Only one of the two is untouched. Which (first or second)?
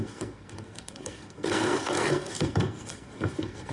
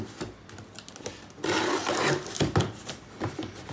second